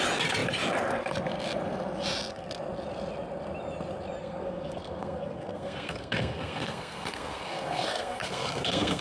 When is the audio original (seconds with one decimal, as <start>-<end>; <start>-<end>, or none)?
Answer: 0.0-4.2